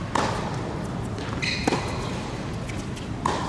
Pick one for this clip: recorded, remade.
recorded